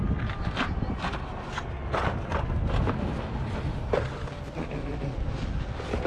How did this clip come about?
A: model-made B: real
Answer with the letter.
B